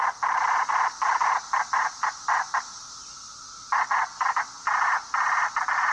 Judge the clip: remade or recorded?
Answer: recorded